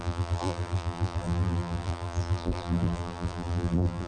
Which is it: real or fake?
fake